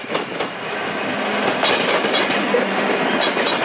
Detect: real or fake real